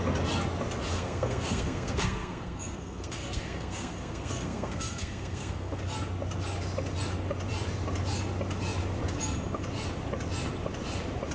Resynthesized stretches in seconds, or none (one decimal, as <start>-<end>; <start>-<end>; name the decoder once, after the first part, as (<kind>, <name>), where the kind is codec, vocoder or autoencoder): 0.9-5.8 (codec, SNAC)